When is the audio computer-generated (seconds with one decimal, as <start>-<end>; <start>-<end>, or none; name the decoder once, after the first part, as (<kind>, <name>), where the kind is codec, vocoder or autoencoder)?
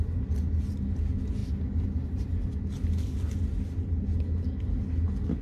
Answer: none